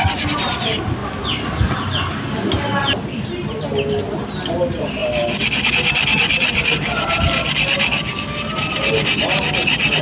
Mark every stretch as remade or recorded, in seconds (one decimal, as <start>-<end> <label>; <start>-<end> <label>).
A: 0.0-10.0 recorded

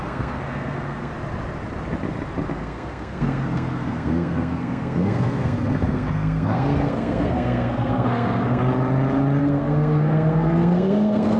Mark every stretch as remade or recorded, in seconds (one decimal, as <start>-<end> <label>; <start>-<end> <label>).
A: 0.0-1.1 remade; 1.1-2.5 recorded; 2.5-8.6 remade; 8.6-9.4 recorded; 9.4-11.4 remade

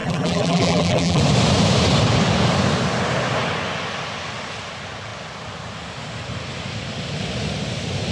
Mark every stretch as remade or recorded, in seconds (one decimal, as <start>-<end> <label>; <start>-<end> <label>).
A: 0.0-1.2 remade; 1.2-8.1 recorded

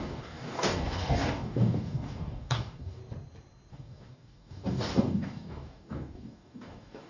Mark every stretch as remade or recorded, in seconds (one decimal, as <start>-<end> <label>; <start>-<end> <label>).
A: 0.0-3.0 remade; 3.0-3.7 recorded; 3.7-7.1 remade